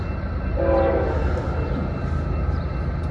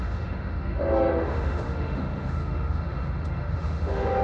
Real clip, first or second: first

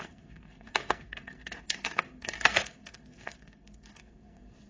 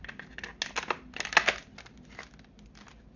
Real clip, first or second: second